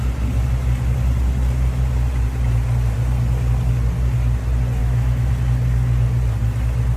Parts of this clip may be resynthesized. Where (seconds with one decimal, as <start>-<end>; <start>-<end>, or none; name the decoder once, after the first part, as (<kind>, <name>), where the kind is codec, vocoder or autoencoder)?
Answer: 4.8-5.3 (autoencoder, DAC-VAE)